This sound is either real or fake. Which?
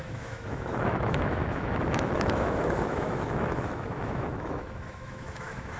fake